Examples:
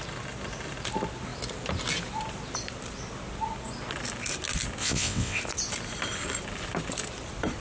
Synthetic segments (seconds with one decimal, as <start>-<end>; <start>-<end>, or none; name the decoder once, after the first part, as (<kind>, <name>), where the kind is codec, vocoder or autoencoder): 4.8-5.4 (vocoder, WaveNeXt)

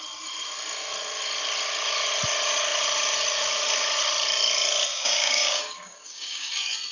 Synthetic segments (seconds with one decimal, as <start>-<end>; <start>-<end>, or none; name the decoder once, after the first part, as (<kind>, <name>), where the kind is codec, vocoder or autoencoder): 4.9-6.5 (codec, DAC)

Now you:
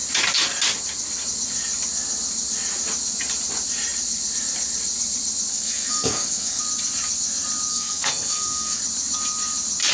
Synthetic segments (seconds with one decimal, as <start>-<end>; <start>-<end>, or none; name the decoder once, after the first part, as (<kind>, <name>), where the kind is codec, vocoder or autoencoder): 5.5-6.6 (codec, SNAC); 7.7-8.8

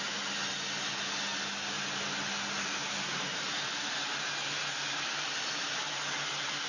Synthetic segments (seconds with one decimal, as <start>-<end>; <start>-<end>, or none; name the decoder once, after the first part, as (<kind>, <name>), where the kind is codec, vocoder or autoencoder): none

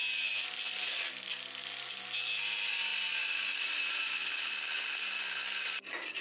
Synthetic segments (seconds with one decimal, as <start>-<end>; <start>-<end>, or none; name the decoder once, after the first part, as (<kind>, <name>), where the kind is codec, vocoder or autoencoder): none

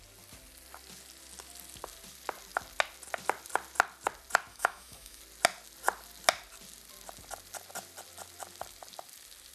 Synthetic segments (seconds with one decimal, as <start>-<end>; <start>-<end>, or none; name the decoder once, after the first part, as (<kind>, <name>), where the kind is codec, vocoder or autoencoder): 4.5-5.2 (autoencoder, DAC-VAE)

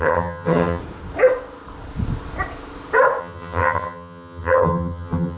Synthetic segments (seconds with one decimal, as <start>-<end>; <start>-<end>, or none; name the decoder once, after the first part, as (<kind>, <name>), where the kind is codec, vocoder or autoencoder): 0.0-0.8 (vocoder, HiFi-GAN); 3.2-5.4